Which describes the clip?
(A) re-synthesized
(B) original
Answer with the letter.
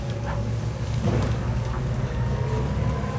A